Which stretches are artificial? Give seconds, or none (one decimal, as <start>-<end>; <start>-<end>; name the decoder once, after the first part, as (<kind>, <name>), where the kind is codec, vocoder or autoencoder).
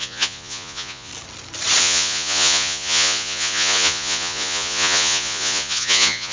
0.0-1.1 (vocoder, Vocos); 1.8-6.3